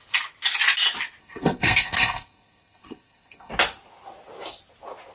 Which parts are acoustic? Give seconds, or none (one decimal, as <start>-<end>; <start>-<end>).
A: 0.0-1.2; 3.5-5.1